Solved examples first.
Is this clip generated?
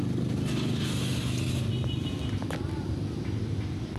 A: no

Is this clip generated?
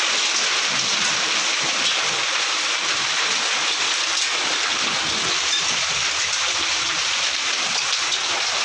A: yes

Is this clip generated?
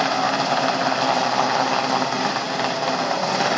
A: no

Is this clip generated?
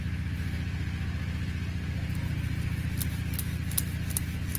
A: no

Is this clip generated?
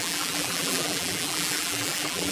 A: yes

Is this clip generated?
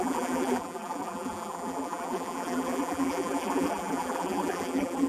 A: yes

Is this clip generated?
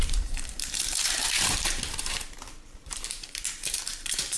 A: yes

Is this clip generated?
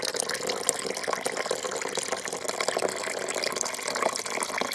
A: no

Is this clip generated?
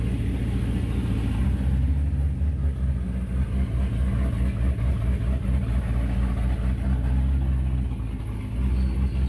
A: no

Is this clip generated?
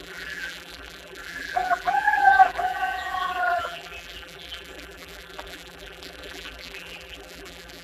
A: yes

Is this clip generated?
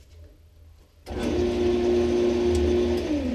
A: no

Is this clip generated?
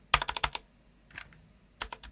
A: no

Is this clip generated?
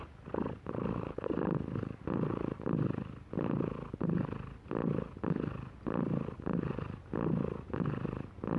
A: no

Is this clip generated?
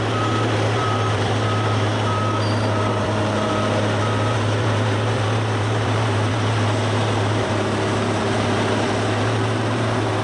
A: yes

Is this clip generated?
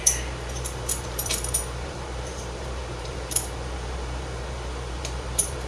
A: yes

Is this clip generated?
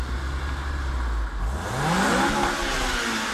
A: no